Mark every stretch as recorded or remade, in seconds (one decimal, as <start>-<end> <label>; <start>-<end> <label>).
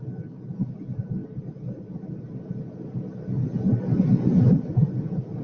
0.0-5.4 recorded